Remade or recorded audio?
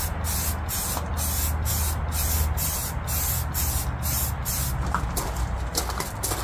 recorded